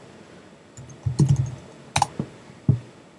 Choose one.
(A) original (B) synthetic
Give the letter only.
A